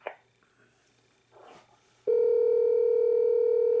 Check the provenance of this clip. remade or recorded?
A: recorded